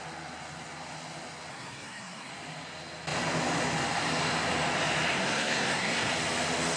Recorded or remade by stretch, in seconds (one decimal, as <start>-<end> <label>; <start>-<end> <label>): 0.0-1.5 recorded; 1.5-2.3 remade; 2.3-5.1 recorded; 5.1-6.1 remade; 6.1-6.8 recorded